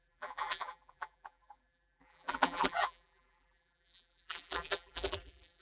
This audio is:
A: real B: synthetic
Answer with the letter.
B